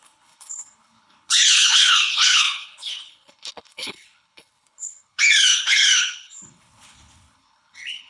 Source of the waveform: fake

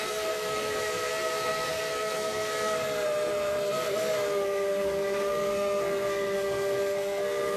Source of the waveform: fake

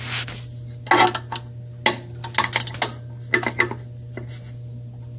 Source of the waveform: real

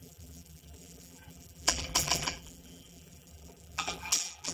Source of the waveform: fake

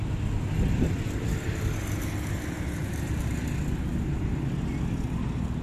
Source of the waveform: real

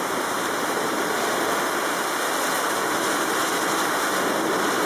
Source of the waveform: real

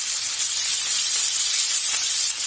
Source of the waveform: real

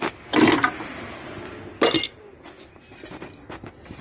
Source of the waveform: real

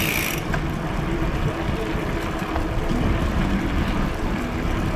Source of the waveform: real